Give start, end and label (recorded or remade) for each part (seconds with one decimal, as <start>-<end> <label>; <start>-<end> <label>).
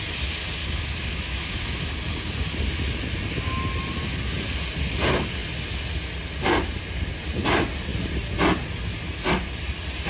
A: 0.0-0.6 recorded; 0.6-1.9 remade; 1.9-10.1 recorded